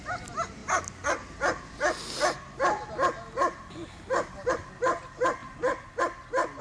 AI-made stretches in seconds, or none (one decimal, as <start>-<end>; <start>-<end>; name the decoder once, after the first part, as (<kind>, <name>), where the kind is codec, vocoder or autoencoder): none